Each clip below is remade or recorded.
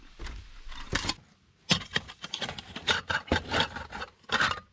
recorded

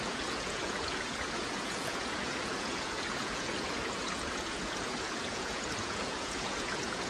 remade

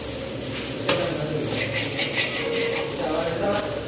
recorded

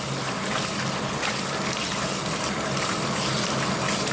recorded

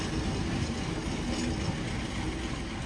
recorded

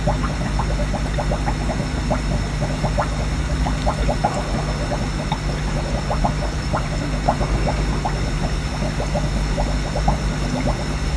recorded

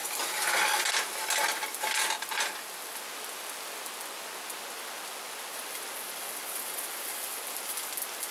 recorded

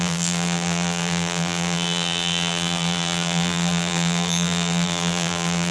remade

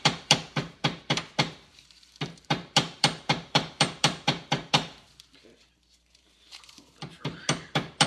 remade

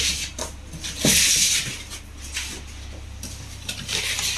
recorded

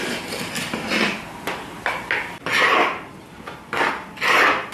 recorded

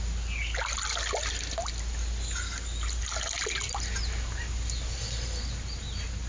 recorded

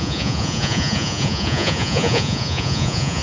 remade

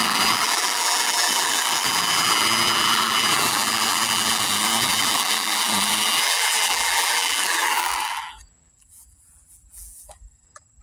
remade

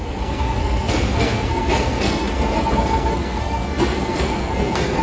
remade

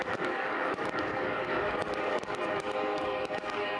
remade